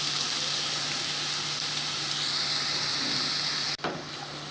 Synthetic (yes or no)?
no